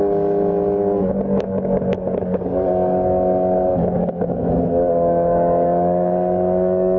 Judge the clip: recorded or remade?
remade